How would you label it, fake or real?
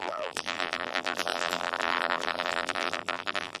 fake